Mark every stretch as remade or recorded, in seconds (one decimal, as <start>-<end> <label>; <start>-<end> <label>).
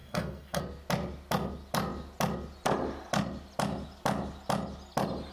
0.0-0.6 remade; 0.6-5.3 recorded